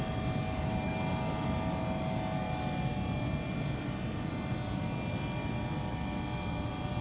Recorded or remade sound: recorded